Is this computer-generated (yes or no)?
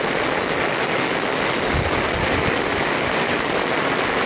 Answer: no